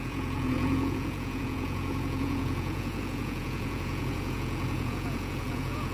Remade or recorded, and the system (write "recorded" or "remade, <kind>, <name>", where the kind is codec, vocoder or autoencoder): remade, vocoder, Vocos